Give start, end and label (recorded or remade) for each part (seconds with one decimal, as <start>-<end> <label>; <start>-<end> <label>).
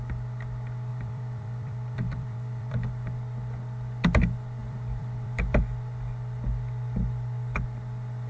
0.0-0.9 recorded; 0.9-2.9 remade; 2.9-4.6 recorded; 4.6-5.6 remade; 5.6-8.3 recorded